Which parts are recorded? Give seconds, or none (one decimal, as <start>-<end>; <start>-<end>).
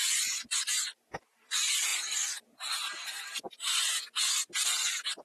0.0-5.2